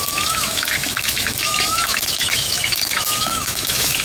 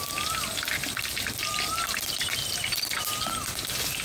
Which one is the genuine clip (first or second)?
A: second